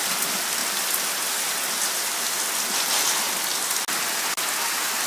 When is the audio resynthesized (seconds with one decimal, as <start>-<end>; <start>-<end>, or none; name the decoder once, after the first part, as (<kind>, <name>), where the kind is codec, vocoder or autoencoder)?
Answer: none